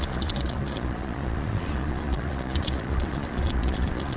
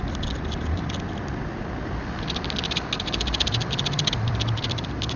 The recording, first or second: second